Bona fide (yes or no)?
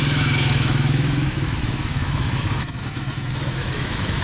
no